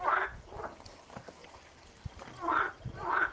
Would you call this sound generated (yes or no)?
no